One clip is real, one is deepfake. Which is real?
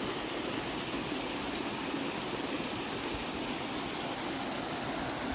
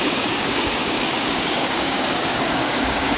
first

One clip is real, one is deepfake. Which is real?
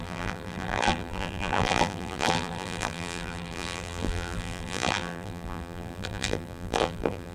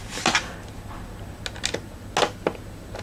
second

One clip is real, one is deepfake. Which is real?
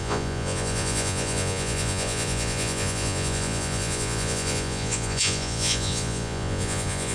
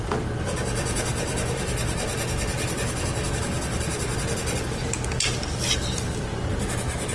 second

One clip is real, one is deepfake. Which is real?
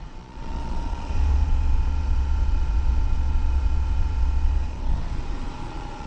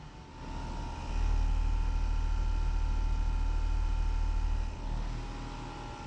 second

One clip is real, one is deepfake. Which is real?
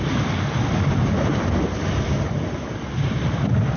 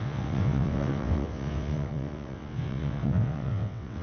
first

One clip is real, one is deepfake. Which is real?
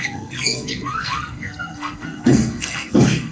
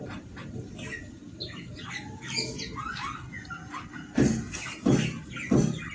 second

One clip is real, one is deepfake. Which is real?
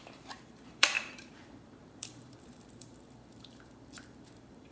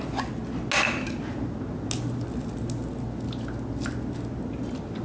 second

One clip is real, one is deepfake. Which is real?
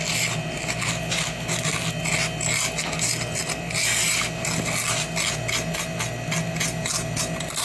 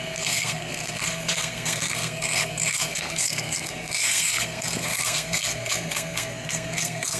first